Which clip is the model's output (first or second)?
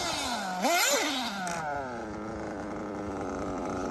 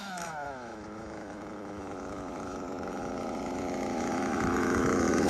second